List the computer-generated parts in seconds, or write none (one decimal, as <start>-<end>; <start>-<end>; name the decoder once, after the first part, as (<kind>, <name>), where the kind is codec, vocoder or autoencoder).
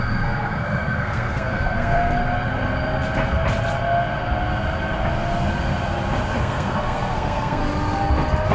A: 0.0-2.2 (codec, SNAC); 6.4-7.6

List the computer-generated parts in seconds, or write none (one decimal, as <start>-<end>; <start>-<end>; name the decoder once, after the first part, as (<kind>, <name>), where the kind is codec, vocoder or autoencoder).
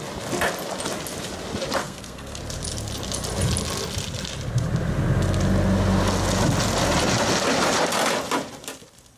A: 1.8-2.4 (codec, SNAC)